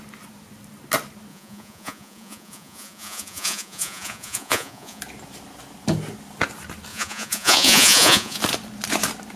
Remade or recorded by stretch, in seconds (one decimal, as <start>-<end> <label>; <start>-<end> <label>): 0.0-1.3 recorded; 1.3-5.0 remade; 5.0-6.9 recorded; 6.9-8.4 remade; 8.4-9.4 recorded